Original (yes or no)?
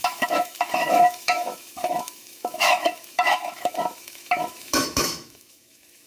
no